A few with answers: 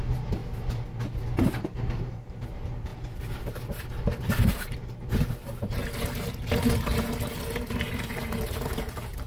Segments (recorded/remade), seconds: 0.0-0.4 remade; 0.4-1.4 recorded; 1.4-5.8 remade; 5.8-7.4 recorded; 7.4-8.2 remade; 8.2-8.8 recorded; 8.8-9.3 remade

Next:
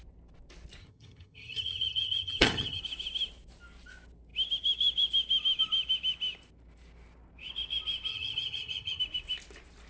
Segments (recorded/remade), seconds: 0.0-0.8 recorded; 0.8-2.8 remade; 2.8-8.1 recorded; 8.1-9.0 remade; 9.0-9.9 recorded